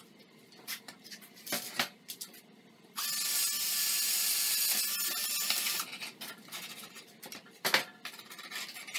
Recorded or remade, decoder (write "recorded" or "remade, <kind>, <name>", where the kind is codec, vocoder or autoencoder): recorded